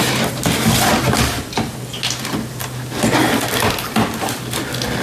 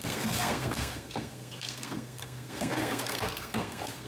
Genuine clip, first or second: first